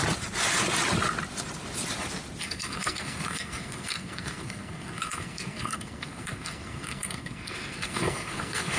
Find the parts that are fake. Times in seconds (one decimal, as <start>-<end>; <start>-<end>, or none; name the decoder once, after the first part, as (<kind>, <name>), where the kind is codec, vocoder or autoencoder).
2.4-8.8 (codec, SNAC)